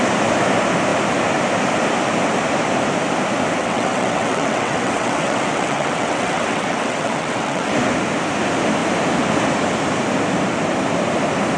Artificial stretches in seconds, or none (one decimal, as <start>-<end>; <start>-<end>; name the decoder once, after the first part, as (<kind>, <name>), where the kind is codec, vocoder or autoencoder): 3.6-7.7 (vocoder, WaveNeXt)